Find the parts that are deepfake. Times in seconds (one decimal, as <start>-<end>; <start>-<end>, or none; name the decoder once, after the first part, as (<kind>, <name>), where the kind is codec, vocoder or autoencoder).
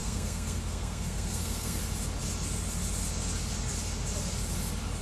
0.0-1.8 (codec, SNAC)